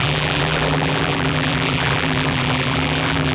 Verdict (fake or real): fake